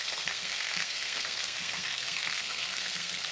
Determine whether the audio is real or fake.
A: fake